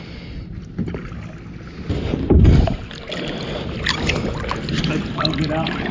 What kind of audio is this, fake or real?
real